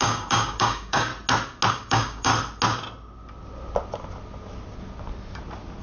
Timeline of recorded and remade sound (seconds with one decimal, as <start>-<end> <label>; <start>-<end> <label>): 0.0-1.1 remade; 1.1-1.7 recorded; 1.7-2.3 remade; 2.3-5.8 recorded